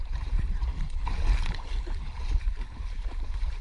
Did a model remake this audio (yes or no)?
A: yes